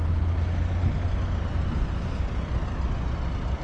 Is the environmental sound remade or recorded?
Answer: recorded